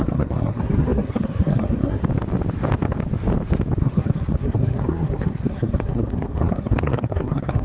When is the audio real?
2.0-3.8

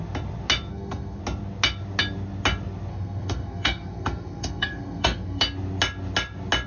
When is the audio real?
0.0-0.7; 1.2-2.9; 5.4-6.7

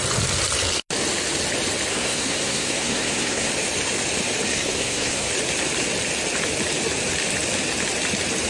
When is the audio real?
0.0-1.9; 3.5-4.5; 5.3-8.5